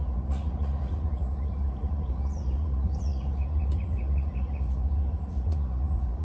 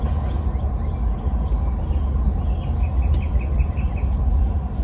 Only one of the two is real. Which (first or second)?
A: second